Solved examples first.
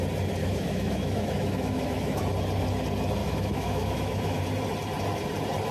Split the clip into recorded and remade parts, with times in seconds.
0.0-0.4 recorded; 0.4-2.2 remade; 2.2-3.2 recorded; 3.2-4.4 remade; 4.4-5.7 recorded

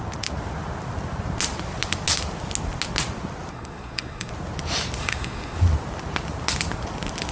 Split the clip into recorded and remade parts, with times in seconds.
0.0-3.5 recorded; 3.5-4.3 remade; 4.3-5.0 recorded; 5.0-5.6 remade; 5.6-7.3 recorded

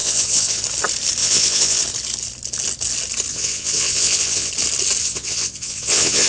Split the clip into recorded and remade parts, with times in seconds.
0.0-0.6 remade; 0.6-1.2 recorded; 1.2-1.8 remade; 1.8-3.3 recorded; 3.3-4.5 remade; 4.5-5.0 recorded; 5.0-6.3 remade

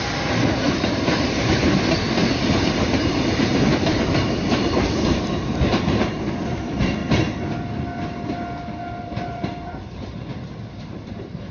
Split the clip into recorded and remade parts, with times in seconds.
0.0-7.0 remade; 7.0-9.0 recorded; 9.0-10.3 remade; 10.3-11.1 recorded; 11.1-11.5 remade

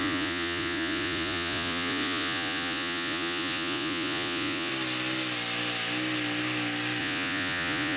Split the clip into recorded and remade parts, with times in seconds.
0.0-4.7 remade; 4.7-7.0 recorded; 7.0-8.0 remade